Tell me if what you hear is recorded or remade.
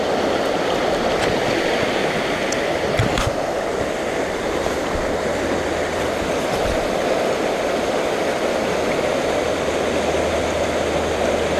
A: recorded